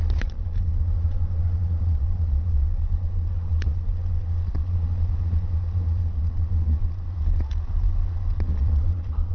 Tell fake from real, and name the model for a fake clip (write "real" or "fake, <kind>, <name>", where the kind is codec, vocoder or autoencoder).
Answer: fake, vocoder, Vocos